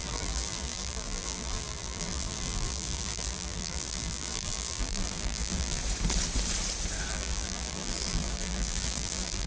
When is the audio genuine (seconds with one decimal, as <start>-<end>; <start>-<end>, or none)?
5.8-7.1